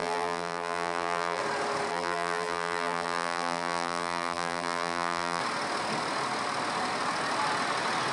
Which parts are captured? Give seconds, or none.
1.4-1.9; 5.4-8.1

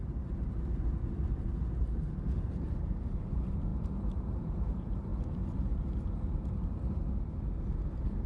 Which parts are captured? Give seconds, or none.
5.1-8.3

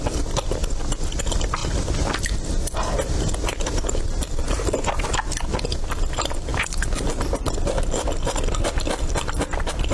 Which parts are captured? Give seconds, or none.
0.0-1.6; 2.2-6.5; 9.4-9.9

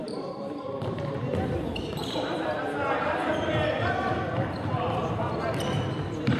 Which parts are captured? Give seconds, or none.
2.6-6.4

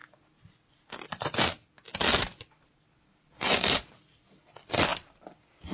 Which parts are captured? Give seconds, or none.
4.9-5.7

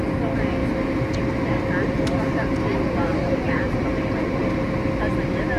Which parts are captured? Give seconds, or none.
0.0-2.7; 4.4-5.6